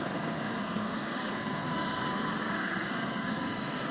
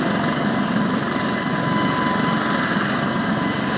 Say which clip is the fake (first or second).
first